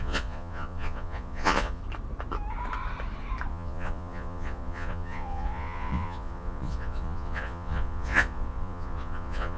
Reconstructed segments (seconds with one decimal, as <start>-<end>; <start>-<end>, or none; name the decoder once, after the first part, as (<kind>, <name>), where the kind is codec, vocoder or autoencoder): 0.0-1.8 (vocoder, Vocos); 3.5-9.6